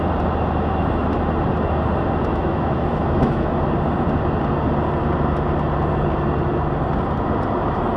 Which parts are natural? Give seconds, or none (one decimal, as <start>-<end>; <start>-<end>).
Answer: 0.0-2.3; 3.6-8.0